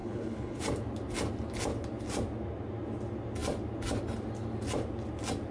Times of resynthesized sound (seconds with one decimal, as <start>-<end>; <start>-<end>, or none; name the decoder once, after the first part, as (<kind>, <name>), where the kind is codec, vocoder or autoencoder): 0.0-0.6 (codec, HILCodec)